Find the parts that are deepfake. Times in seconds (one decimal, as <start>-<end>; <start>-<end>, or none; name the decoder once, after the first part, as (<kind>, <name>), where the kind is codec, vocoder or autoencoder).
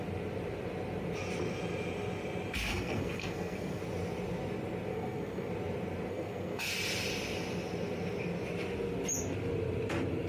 2.7-3.8 (codec, SNAC); 4.9-5.5; 6.1-6.7